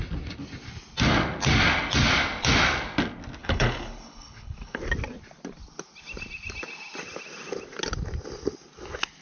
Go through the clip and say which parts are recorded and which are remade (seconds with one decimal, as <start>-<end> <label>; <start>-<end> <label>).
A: 0.0-3.4 recorded; 3.4-4.8 remade; 4.8-9.2 recorded